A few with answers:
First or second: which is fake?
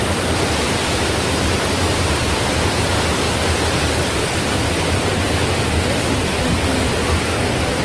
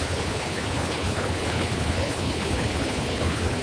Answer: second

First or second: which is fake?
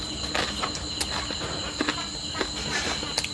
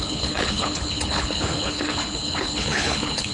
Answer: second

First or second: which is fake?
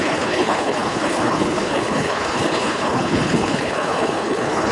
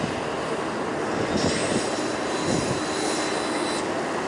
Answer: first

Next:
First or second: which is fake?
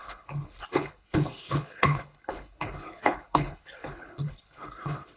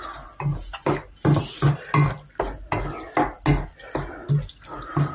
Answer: first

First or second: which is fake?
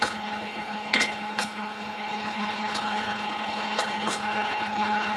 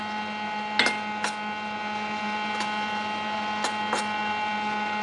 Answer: first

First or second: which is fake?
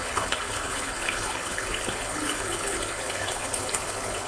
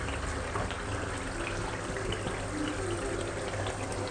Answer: first